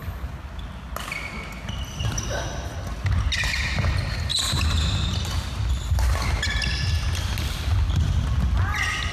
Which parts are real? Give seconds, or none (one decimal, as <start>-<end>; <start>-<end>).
0.0-9.1